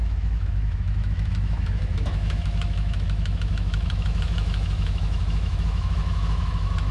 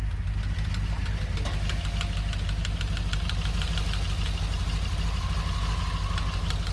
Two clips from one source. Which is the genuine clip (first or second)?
second